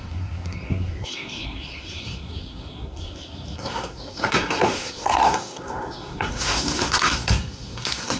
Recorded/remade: remade